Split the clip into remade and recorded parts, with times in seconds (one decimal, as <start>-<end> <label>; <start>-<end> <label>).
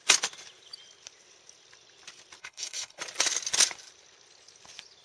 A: 0.0-2.4 recorded; 2.4-3.0 remade; 3.0-5.0 recorded